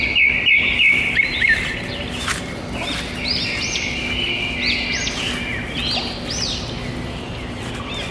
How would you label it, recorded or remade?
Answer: recorded